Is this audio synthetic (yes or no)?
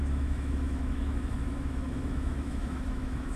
yes